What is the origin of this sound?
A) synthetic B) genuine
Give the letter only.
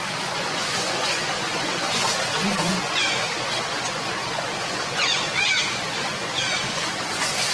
A